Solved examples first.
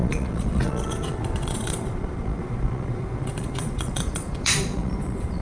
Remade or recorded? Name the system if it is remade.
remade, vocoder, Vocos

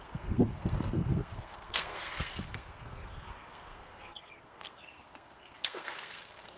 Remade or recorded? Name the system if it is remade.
remade, codec, SNAC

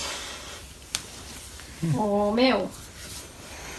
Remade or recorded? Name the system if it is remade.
remade, vocoder, BigVGAN v2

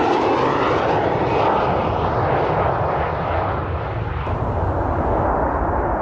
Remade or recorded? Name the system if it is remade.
recorded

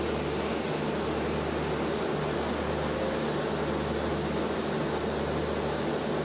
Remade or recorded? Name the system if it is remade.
recorded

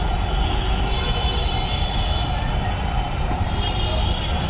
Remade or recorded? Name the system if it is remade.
recorded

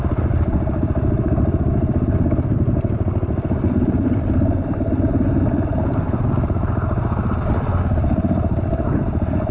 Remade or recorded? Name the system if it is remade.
recorded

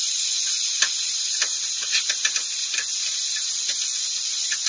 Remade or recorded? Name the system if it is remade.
recorded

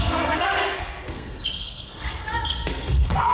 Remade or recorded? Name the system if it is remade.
remade, codec, SNAC